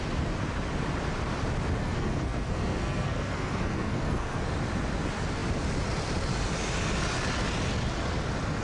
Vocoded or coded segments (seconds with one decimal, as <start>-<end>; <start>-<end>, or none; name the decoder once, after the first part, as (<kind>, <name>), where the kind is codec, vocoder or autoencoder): 1.8-4.4 (codec, SNAC)